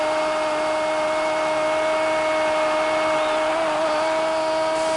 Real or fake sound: real